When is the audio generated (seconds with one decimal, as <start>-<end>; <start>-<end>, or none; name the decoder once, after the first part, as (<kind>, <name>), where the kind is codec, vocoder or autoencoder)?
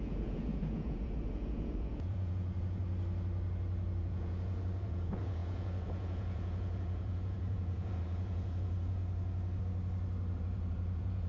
0.0-2.8 (vocoder, Vocos); 4.0-9.0; 10.3-11.3